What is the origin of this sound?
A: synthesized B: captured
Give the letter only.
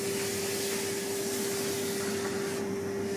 B